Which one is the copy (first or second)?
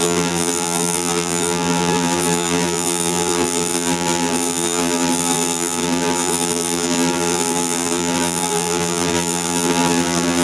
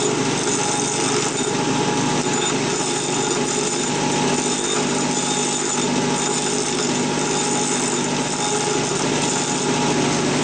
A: first